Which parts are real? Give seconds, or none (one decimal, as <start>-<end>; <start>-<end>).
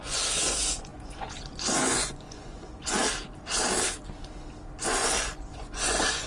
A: 3.0-4.8